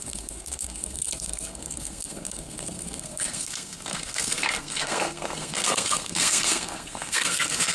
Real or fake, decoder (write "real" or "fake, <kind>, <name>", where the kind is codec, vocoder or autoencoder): fake, codec, SNAC